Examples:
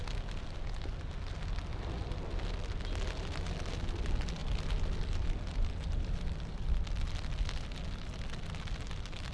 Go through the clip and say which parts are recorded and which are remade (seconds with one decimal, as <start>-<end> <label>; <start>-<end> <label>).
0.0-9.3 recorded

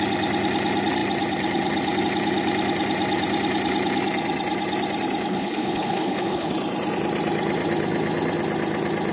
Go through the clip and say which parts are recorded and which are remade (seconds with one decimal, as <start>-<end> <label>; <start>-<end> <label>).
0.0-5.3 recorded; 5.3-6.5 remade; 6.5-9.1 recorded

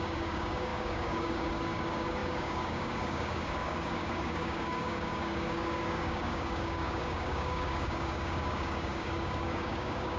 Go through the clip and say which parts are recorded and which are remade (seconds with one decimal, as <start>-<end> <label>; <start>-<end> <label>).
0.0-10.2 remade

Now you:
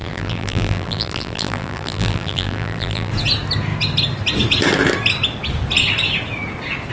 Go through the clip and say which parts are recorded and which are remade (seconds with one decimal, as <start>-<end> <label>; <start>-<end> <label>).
0.0-3.1 remade; 3.1-6.9 recorded

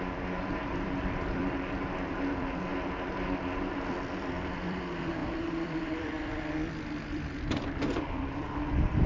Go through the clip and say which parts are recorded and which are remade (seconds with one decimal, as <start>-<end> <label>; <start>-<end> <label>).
0.0-1.4 remade; 1.4-2.2 recorded; 2.2-9.1 remade

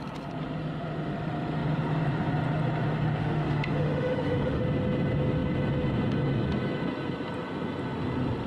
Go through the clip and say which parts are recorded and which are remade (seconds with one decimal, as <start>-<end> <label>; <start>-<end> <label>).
0.0-3.2 recorded; 3.2-4.6 remade; 4.6-8.5 recorded

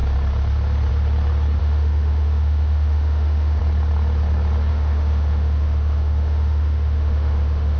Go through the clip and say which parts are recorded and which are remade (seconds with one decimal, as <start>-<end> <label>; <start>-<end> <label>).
0.0-1.6 recorded; 1.6-3.6 remade; 3.6-4.7 recorded; 4.7-7.8 remade